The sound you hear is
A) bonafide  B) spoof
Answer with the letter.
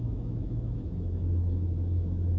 B